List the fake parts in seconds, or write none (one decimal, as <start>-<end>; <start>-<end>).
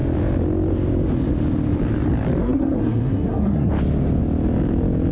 2.4-3.7